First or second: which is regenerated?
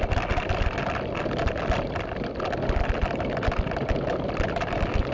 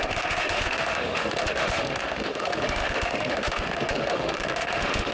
second